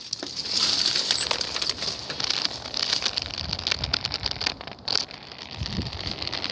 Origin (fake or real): real